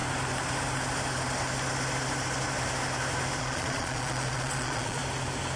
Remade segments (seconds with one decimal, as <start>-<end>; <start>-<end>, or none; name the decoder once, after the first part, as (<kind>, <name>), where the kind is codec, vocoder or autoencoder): 3.4-5.0 (vocoder, Vocos)